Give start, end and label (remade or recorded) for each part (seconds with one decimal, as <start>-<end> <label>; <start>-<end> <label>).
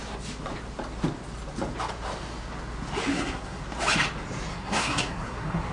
0.0-3.1 recorded; 3.1-3.6 remade; 3.6-4.5 recorded; 4.5-5.7 remade